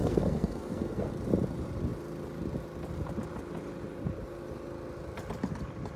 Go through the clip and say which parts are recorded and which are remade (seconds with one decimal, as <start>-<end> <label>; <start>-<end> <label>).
0.0-1.1 remade; 1.1-6.0 recorded